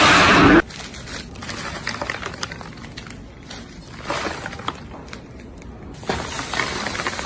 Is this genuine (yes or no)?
no